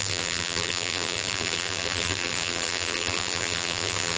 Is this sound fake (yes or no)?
yes